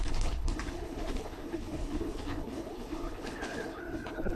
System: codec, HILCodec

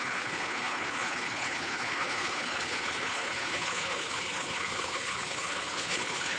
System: codec, HILCodec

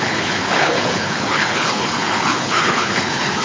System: codec, HILCodec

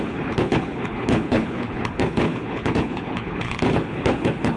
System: codec, HILCodec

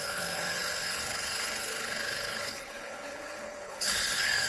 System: codec, HILCodec